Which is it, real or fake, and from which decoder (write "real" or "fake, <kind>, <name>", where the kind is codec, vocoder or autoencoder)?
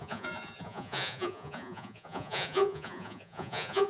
fake, vocoder, Vocos